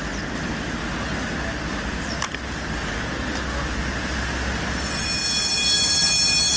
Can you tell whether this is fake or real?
real